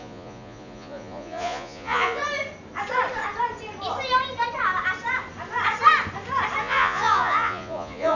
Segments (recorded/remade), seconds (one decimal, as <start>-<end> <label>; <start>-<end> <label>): 0.0-2.2 remade; 2.2-6.6 recorded; 6.6-8.2 remade